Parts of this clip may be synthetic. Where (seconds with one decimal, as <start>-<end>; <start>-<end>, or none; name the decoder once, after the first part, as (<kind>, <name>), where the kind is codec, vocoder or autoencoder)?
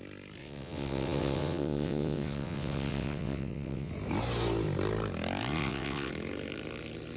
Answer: 0.4-3.9 (vocoder, WaveNeXt); 5.6-6.1